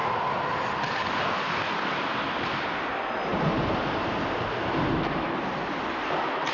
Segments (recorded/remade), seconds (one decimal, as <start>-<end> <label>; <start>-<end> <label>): 0.0-6.5 recorded

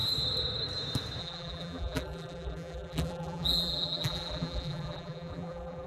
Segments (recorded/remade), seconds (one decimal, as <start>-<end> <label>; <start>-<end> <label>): 0.0-1.2 recorded; 1.2-5.9 remade

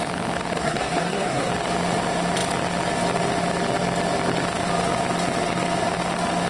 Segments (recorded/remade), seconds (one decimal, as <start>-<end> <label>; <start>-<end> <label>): 0.0-0.6 recorded; 0.6-1.5 remade; 1.5-6.5 recorded